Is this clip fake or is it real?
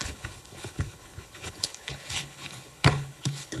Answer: fake